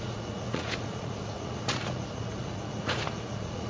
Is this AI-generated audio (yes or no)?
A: yes